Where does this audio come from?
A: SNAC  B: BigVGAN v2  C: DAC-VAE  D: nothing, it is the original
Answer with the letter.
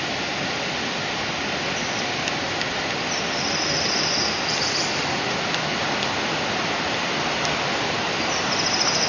D